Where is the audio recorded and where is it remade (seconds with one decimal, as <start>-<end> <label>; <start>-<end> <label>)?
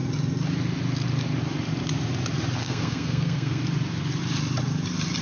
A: 0.0-2.6 recorded; 2.6-3.6 remade; 3.6-5.2 recorded